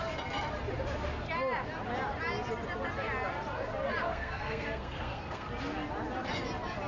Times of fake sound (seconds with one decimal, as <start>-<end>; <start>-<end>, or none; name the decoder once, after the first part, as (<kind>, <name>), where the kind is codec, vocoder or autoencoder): 4.0-5.5 (codec, SNAC)